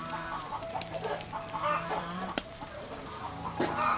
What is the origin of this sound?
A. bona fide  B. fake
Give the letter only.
B